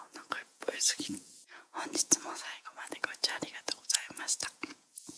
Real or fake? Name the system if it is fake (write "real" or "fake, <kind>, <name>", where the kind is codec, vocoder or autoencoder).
fake, vocoder, Vocos